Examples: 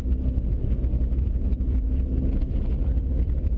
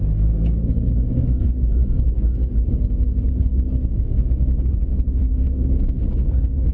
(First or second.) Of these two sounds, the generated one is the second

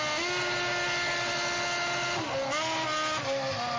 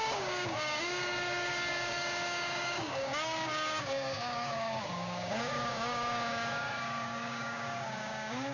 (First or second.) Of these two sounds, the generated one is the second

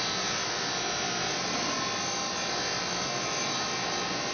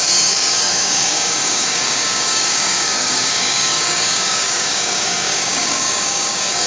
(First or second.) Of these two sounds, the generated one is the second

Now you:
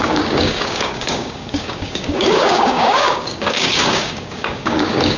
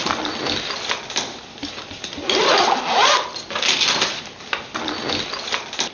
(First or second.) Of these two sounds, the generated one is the first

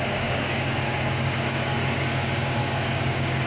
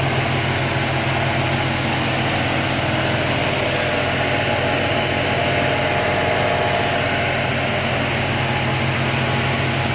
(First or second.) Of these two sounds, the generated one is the first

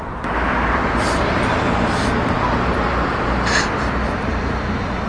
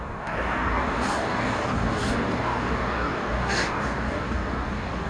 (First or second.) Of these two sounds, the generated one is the second